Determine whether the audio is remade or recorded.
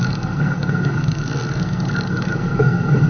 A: remade